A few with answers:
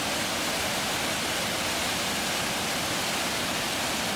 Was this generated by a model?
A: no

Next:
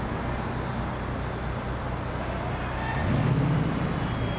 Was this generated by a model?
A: no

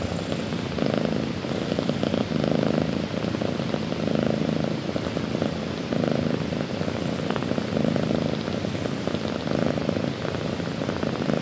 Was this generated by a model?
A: no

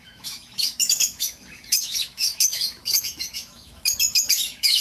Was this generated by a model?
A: yes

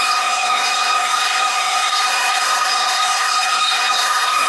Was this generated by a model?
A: yes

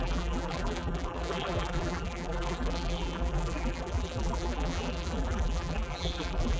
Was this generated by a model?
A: yes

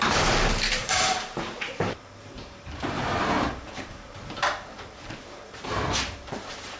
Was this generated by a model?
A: yes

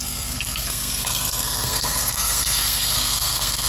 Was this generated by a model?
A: yes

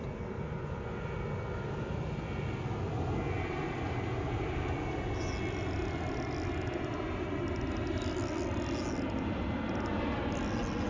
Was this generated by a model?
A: no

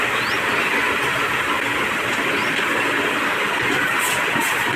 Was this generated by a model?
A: no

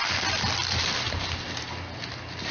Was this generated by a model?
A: no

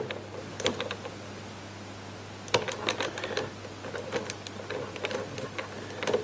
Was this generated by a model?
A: no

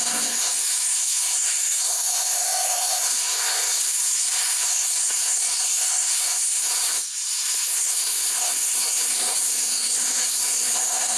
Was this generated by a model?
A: yes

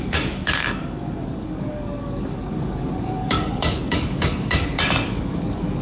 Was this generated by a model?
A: yes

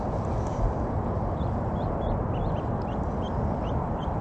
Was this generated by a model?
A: no